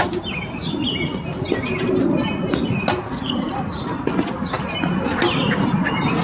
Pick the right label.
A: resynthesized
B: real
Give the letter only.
B